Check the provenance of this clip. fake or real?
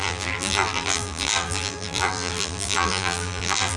fake